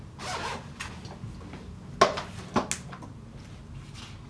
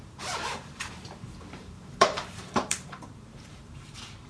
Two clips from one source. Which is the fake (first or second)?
second